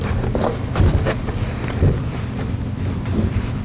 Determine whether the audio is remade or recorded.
remade